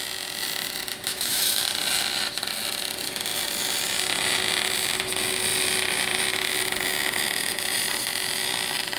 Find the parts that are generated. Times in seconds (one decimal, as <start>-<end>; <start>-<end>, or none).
1.1-1.6